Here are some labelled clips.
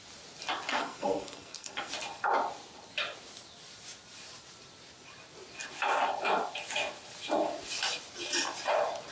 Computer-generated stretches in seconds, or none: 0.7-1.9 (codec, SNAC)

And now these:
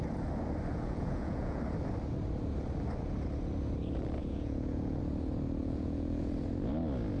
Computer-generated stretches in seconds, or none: 0.7-1.6 (vocoder, Vocos); 4.2-5.0; 5.6-6.3

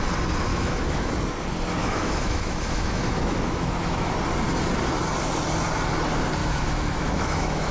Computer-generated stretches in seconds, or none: 0.5-1.1 (autoencoder, DAC-VAE); 1.8-4.1; 6.4-7.7

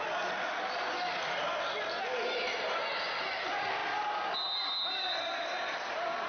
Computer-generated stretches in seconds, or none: none

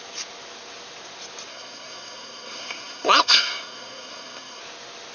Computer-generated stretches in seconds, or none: 1.5-4.6 (codec, SNAC)

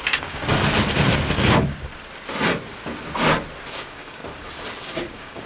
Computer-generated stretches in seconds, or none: 0.0-0.4 (codec, DAC); 3.7-4.2; 4.8-5.5

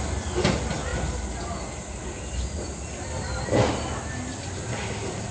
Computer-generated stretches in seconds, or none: none